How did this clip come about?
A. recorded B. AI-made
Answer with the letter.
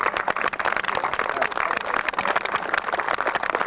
A